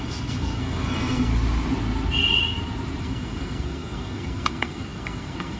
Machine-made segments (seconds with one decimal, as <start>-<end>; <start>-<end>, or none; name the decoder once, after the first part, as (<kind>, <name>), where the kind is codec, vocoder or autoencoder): 0.0-1.3 (codec, SNAC); 3.0-5.6